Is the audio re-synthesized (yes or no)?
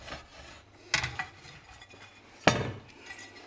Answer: no